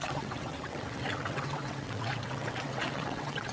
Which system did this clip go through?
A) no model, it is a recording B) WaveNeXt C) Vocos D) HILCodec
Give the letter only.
B